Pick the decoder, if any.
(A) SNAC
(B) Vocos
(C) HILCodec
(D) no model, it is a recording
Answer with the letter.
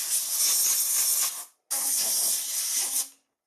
D